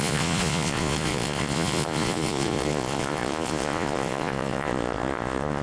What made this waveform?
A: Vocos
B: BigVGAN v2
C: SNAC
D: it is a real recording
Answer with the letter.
A